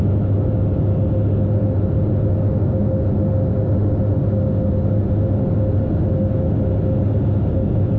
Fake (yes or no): no